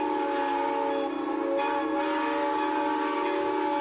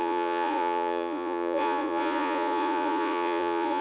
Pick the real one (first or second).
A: first